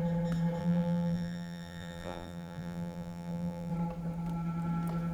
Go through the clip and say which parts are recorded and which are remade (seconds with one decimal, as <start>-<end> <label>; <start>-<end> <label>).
0.0-0.6 recorded; 0.6-3.7 remade; 3.7-5.1 recorded